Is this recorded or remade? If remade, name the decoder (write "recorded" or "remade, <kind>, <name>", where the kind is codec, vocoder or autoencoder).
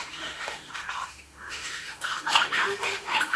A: remade, autoencoder, DAC-VAE